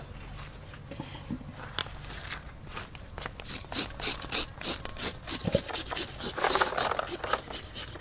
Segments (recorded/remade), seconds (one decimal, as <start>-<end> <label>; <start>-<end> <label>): 0.0-8.0 recorded

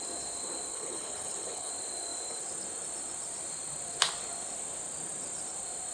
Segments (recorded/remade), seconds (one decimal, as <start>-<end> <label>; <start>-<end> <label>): 0.0-0.7 recorded; 0.7-1.7 remade; 1.7-5.9 recorded

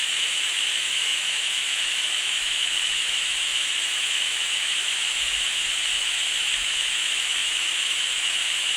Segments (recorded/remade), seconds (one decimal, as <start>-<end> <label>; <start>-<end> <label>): 0.0-8.8 remade

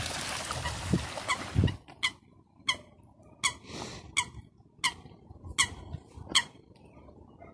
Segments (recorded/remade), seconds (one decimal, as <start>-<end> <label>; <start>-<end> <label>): 0.0-7.5 recorded

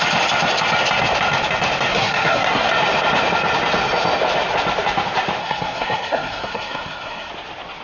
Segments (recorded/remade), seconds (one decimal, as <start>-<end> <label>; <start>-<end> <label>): 0.0-1.9 recorded; 1.9-2.7 remade; 2.7-5.4 recorded; 5.4-7.3 remade; 7.3-7.8 recorded

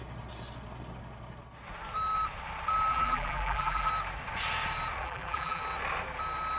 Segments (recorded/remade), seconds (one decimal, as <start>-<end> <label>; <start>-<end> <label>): 0.0-2.9 recorded; 2.9-3.9 remade; 3.9-5.0 recorded; 5.0-5.6 remade; 5.6-6.6 recorded